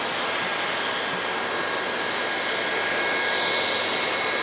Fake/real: real